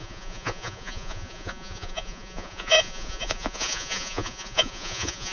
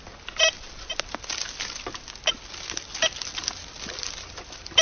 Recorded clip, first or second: second